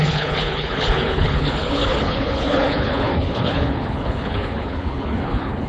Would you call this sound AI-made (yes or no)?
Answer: yes